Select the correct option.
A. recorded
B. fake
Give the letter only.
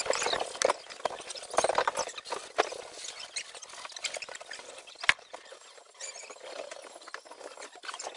A